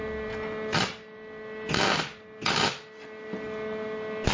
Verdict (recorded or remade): recorded